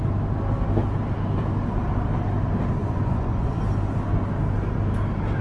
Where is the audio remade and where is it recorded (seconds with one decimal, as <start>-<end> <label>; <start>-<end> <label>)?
0.0-2.8 recorded; 2.8-3.6 remade; 3.6-5.4 recorded